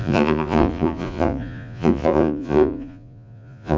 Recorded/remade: remade